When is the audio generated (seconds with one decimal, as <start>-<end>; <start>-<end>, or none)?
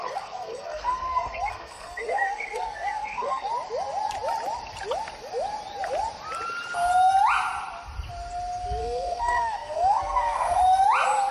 0.0-3.5; 8.8-10.6